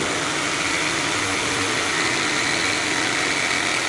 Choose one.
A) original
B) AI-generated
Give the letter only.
A